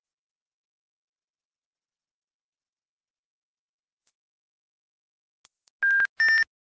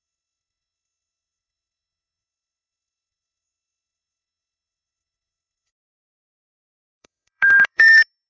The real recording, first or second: first